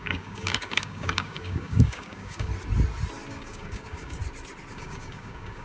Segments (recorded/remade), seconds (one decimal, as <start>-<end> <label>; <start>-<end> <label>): 0.0-2.5 remade; 2.5-3.3 recorded; 3.3-4.2 remade; 4.2-4.7 recorded; 4.7-5.6 remade